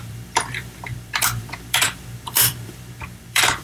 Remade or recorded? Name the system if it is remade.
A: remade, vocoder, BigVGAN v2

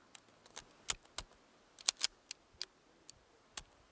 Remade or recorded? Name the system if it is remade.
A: recorded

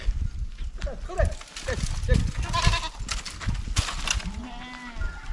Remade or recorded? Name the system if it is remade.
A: recorded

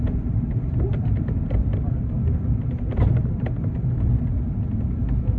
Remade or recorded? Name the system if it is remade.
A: recorded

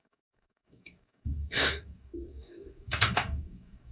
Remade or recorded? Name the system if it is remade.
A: remade, codec, DAC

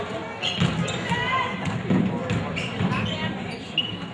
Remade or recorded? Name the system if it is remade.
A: recorded